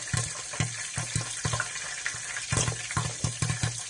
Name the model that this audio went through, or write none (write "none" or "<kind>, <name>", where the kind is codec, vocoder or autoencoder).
none